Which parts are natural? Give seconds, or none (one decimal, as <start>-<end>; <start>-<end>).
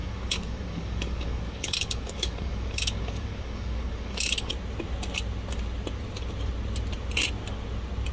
4.5-8.1